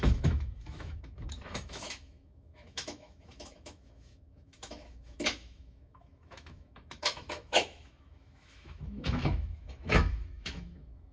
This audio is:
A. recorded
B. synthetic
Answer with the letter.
B